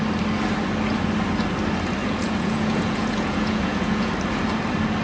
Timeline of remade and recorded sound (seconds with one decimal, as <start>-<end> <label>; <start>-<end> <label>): 0.0-2.0 recorded; 2.0-4.1 remade; 4.1-5.0 recorded